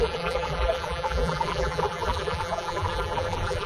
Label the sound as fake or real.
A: fake